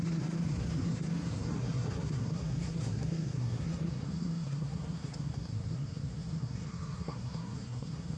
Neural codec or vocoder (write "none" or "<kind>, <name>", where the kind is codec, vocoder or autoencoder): codec, SNAC